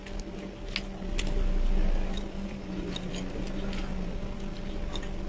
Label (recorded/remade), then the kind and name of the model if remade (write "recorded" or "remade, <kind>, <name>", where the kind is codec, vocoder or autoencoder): recorded